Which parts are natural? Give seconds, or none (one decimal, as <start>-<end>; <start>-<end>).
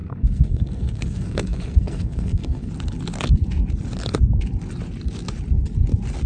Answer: 2.7-6.3